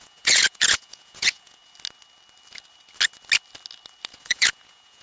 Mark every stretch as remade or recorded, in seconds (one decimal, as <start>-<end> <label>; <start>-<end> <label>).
0.0-1.6 remade; 1.6-4.1 recorded; 4.1-5.0 remade